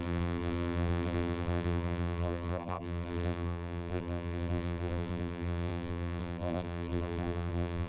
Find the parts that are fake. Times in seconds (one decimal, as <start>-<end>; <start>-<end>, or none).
0.0-7.9